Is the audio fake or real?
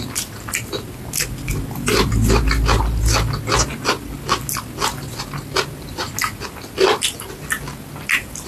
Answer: real